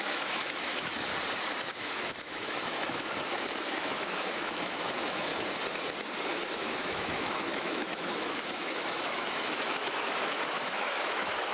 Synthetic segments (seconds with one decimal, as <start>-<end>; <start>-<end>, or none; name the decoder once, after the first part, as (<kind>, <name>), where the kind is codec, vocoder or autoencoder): 0.0-1.1 (autoencoder, DAC-VAE); 1.6-5.3; 6.3-11.5